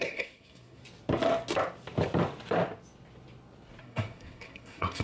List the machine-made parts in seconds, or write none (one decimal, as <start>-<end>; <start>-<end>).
0.0-0.8; 3.8-5.0